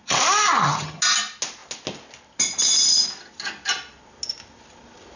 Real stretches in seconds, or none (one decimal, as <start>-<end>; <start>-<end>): 0.0-0.5; 1.0-5.2